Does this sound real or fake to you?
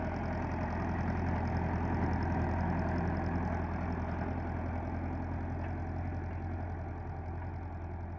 real